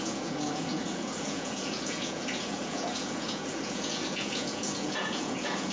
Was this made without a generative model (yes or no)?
no